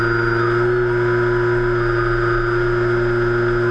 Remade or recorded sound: recorded